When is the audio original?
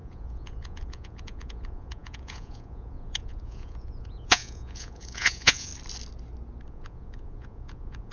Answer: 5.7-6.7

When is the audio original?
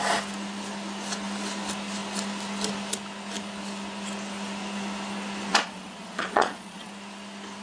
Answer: 0.0-5.5; 6.9-7.6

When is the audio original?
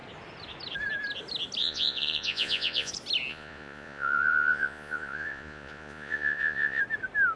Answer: 0.0-1.6; 2.9-3.3; 6.8-7.4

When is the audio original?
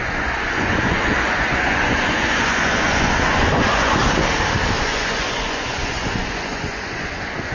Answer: 4.0-4.8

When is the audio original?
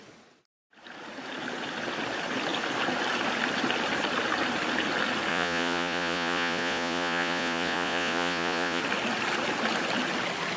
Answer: 0.0-5.3; 8.8-10.6